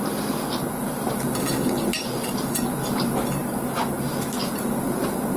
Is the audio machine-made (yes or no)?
yes